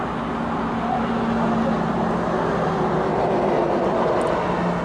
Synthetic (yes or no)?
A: no